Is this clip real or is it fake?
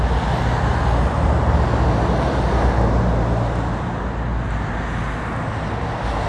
real